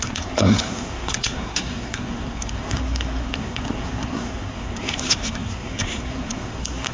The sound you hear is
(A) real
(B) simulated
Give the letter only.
B